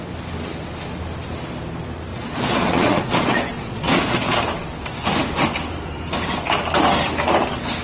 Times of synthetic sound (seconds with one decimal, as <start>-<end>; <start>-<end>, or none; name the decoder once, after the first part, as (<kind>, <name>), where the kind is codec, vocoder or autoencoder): 2.1-4.4 (vocoder, Vocos)